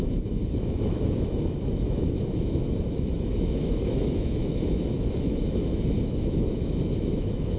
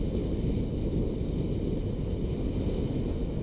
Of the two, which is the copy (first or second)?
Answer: first